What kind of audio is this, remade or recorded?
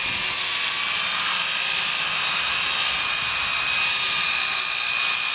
recorded